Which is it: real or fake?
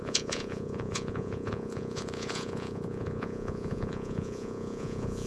fake